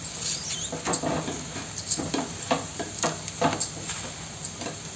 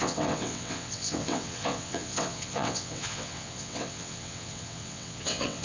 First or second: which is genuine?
first